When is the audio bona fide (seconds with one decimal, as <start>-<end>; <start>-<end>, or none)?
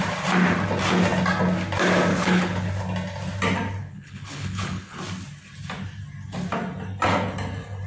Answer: 0.0-2.1; 2.7-3.8; 5.0-7.9